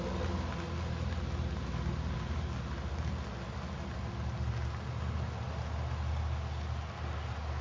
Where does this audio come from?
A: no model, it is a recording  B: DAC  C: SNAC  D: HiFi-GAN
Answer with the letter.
A